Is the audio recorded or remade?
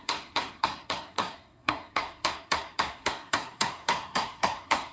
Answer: remade